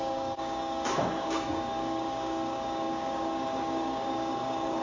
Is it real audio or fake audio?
fake